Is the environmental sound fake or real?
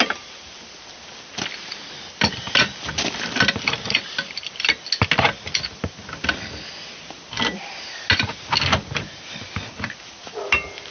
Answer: real